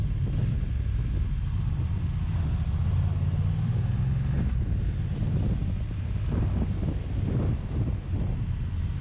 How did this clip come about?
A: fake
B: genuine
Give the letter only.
B